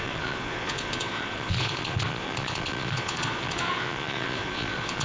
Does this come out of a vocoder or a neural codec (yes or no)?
yes